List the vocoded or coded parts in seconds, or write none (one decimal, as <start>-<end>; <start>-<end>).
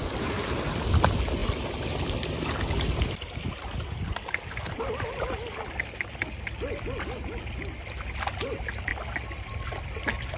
0.0-0.9; 1.4-5.8; 8.9-9.8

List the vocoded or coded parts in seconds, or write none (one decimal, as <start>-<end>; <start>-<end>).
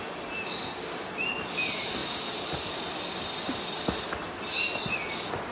none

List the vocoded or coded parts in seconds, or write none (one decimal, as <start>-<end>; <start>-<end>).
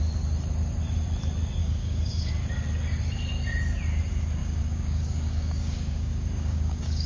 1.6-2.3; 4.4-7.1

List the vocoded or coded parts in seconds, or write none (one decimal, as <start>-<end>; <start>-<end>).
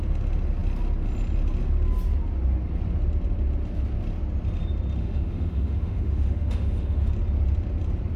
5.0-7.1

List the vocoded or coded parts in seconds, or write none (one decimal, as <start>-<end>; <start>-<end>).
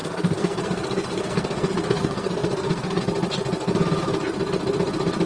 0.0-3.0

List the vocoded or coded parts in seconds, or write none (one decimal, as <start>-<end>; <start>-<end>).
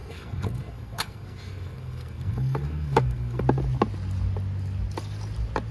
0.0-3.4